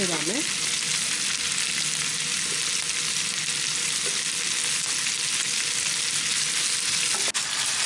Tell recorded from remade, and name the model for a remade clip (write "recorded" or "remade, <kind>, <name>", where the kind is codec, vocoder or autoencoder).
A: recorded